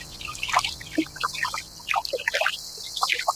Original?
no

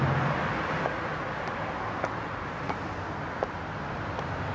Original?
yes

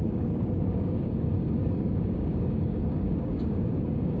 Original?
no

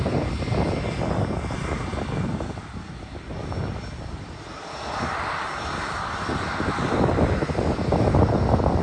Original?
yes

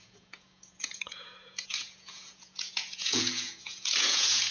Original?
no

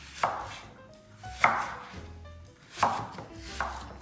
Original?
yes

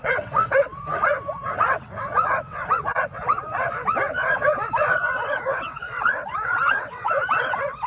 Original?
no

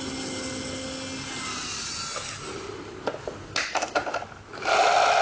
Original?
yes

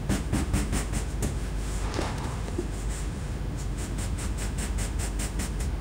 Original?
no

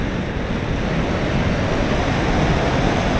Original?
yes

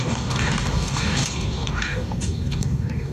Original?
no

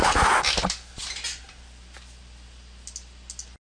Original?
yes